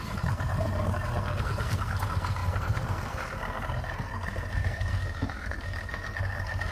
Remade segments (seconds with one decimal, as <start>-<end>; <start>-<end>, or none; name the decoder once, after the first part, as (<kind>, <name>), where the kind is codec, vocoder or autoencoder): 0.0-6.7 (codec, SNAC)